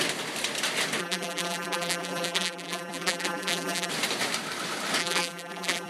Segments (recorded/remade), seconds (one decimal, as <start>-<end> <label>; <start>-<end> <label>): 0.0-1.0 recorded; 1.0-3.9 remade; 3.9-5.0 recorded; 5.0-5.9 remade